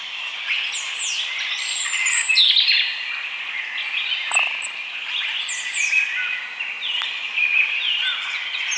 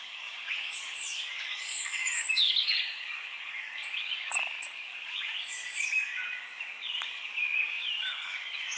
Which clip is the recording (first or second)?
first